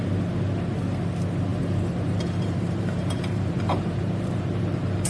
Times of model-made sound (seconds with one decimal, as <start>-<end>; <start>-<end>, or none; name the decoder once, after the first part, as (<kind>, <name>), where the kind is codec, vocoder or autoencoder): 1.5-4.6 (vocoder, BigVGAN v2)